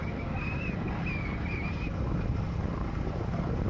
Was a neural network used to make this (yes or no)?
no